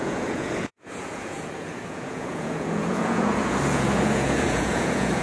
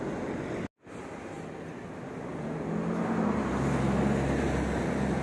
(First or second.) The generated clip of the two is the first